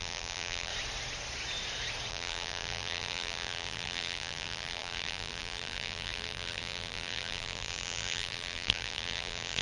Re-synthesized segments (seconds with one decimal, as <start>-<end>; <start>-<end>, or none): 0.0-0.7; 2.1-9.6